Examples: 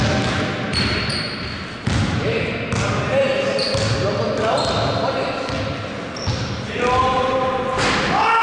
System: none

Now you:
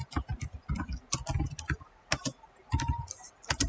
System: none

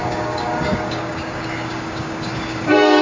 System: codec, DAC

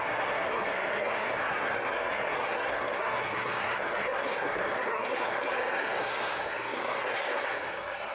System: codec, SNAC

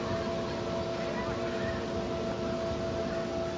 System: none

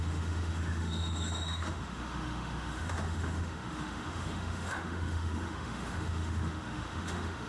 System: autoencoder, DAC-VAE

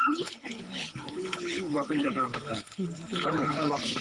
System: codec, HILCodec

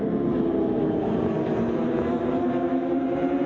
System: vocoder, BigVGAN v2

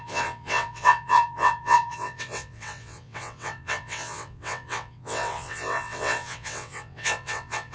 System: vocoder, WaveNeXt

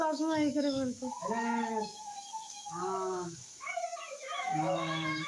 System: autoencoder, DAC-VAE